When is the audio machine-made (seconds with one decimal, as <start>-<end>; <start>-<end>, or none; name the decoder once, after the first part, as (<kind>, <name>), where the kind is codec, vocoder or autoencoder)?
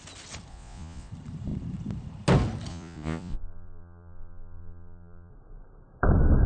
0.5-1.1 (vocoder, Vocos); 2.7-5.3